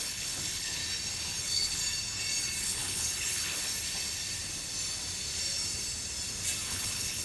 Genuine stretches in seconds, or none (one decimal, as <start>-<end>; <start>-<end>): 0.8-1.4; 1.8-2.6; 3.7-6.7